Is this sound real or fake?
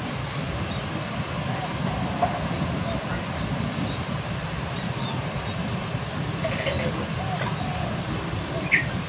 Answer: real